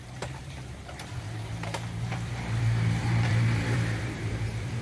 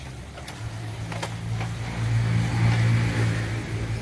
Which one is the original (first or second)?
second